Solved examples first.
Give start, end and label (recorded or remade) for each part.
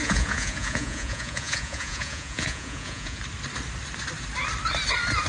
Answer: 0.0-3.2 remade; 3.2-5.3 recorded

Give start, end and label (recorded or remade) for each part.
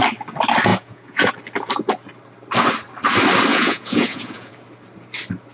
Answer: 0.0-0.7 recorded; 0.7-1.3 remade; 1.3-3.5 recorded; 3.5-4.5 remade; 4.5-5.5 recorded